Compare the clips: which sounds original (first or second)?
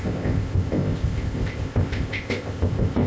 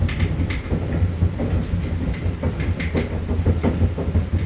second